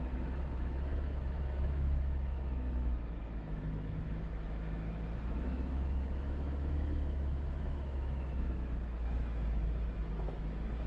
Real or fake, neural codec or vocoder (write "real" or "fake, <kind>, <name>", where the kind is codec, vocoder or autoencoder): fake, autoencoder, DAC-VAE